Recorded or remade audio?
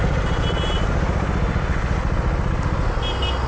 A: recorded